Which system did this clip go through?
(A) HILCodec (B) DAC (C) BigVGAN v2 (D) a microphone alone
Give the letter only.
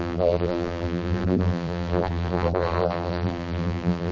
C